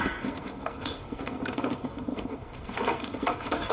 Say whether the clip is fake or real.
fake